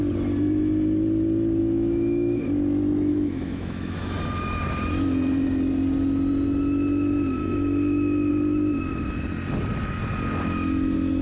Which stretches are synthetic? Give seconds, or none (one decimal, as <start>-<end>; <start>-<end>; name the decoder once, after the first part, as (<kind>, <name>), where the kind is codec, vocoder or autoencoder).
1.6-2.4 (autoencoder, DAC-VAE); 3.1-4.1; 7.4-8.3

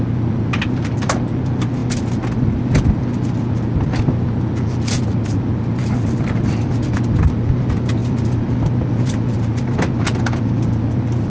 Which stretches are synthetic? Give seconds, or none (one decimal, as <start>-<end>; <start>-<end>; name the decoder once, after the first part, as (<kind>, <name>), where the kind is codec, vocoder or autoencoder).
none

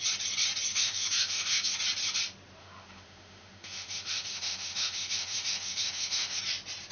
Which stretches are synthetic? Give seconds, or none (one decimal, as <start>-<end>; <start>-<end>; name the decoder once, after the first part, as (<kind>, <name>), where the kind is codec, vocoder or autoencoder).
0.7-1.7 (autoencoder, DAC-VAE); 2.6-6.4

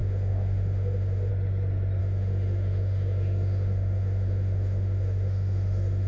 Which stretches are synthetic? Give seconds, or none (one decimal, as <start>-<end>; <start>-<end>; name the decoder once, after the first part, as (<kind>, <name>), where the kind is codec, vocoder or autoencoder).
0.0-1.3 (autoencoder, DAC-VAE); 2.0-6.1

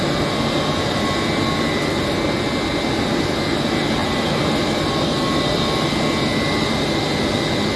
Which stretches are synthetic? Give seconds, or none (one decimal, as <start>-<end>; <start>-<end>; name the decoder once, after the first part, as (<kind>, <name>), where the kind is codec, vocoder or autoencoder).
none

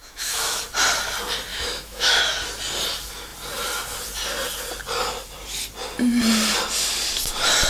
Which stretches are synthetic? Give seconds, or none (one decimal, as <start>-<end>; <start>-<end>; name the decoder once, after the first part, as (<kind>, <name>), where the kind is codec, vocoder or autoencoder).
0.0-0.6 (autoencoder, DAC-VAE); 1.5-2.2

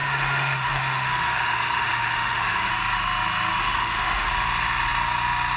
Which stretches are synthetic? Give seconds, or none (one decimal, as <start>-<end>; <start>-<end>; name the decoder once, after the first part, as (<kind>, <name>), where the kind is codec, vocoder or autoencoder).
0.0-2.7 (autoencoder, DAC-VAE); 3.6-4.3

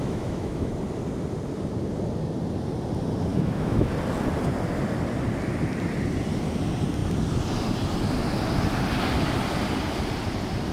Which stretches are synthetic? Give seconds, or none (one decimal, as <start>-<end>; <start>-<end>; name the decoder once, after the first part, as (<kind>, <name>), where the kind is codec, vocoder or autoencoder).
0.0-0.7 (autoencoder, DAC-VAE); 3.3-3.9